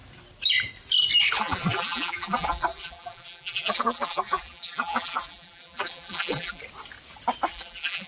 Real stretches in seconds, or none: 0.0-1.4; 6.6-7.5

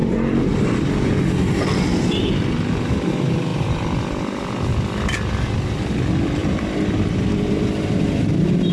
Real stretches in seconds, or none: 0.7-6.4

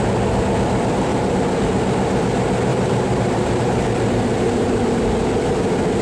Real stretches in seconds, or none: 0.0-1.1; 1.6-2.7; 3.7-4.3; 5.3-6.0

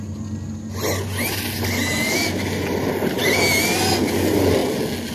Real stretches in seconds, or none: 0.0-5.1

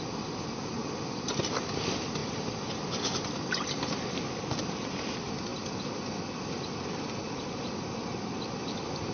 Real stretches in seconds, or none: 0.0-0.8; 1.8-2.2; 2.8-9.1

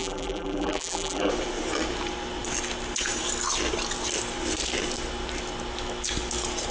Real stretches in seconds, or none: 1.3-6.7